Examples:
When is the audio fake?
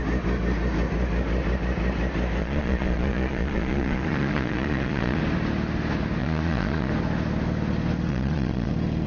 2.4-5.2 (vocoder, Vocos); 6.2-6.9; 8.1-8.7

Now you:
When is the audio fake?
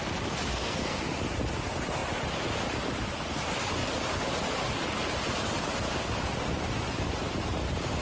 0.5-1.0 (codec, SNAC)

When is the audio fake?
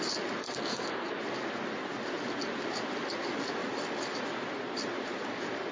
0.4-1.2 (codec, SNAC)